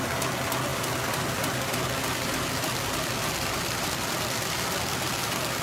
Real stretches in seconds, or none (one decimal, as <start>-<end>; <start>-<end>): 0.0-0.7; 4.1-5.6

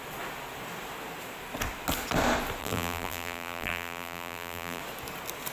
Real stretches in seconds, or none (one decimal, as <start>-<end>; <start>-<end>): 0.0-2.6; 4.8-5.5

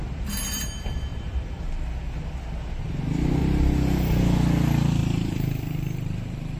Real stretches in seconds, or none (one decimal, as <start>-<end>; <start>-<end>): 0.0-1.1; 1.7-3.4; 4.2-5.0